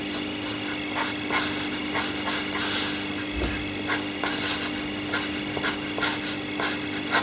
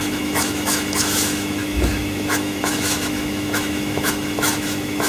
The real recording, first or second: first